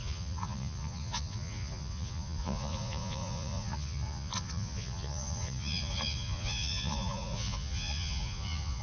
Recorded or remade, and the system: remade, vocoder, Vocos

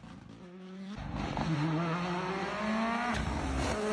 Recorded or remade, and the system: recorded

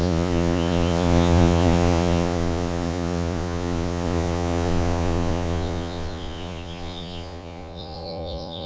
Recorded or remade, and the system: remade, vocoder, Vocos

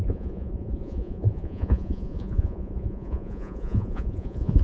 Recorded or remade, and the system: remade, vocoder, Vocos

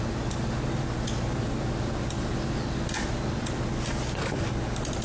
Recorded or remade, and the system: recorded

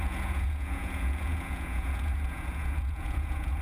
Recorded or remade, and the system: remade, vocoder, Vocos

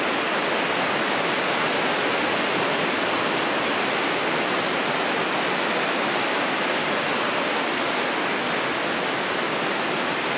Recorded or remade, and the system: recorded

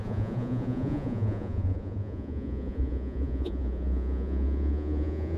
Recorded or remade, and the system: remade, vocoder, Vocos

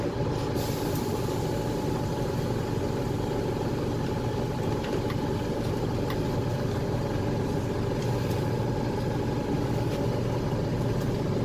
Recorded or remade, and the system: recorded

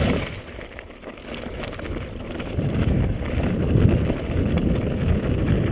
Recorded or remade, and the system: recorded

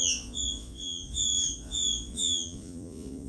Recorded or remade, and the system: remade, vocoder, Vocos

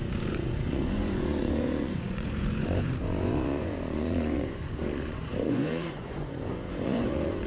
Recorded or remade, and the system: remade, vocoder, Vocos